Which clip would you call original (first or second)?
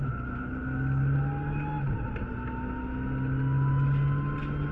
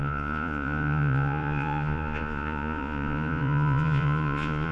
first